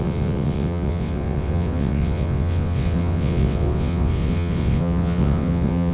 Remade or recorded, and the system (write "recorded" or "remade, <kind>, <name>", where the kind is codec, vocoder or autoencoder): remade, vocoder, WaveNeXt